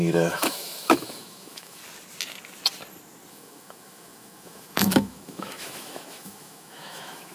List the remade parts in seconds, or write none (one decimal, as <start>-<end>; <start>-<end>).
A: 0.0-1.8; 3.3-7.3